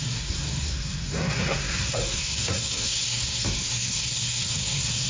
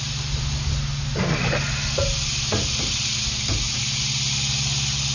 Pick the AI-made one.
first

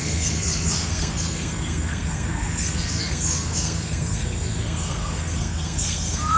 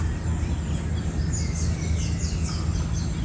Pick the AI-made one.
first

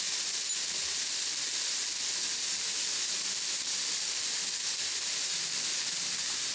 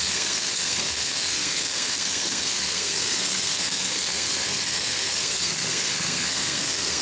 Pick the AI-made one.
second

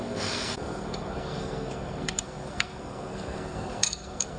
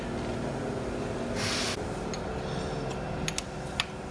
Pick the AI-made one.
first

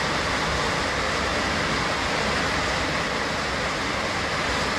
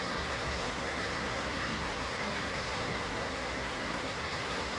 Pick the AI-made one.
second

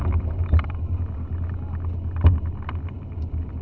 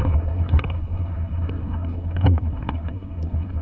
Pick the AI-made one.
second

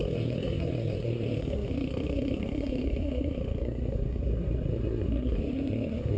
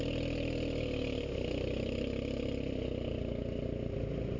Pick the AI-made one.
first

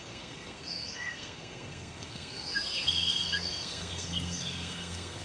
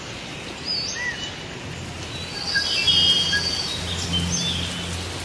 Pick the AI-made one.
first